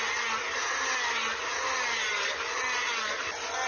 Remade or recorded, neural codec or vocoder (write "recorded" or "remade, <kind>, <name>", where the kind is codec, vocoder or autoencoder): recorded